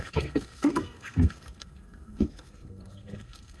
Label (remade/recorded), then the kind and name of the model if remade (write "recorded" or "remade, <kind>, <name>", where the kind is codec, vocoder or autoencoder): remade, codec, SNAC